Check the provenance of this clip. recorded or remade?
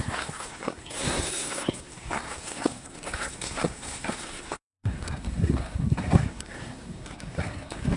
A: remade